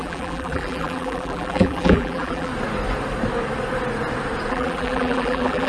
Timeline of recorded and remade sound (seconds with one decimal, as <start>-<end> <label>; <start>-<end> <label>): 0.0-2.5 remade; 2.5-4.5 recorded; 4.5-5.7 remade